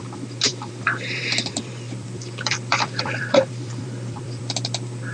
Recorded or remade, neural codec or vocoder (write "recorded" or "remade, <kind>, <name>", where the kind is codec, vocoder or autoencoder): remade, vocoder, BigVGAN v2